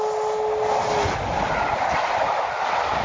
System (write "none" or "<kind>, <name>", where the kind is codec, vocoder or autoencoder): none